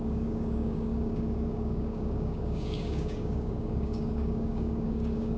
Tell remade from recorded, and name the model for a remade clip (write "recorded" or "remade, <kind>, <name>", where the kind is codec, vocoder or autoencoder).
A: remade, codec, DAC